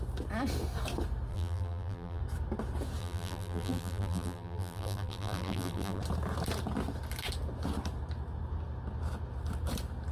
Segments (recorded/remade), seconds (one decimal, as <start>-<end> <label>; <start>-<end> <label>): 0.0-1.3 recorded; 1.3-2.2 remade; 2.2-3.0 recorded; 3.0-6.0 remade; 6.0-10.1 recorded